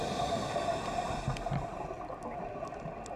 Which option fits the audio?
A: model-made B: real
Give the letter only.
B